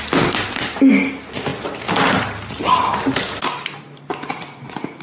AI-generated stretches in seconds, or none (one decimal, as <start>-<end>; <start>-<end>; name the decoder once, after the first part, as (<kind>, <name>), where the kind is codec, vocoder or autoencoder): none